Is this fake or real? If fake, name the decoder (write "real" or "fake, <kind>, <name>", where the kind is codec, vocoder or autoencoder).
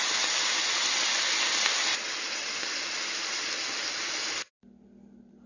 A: real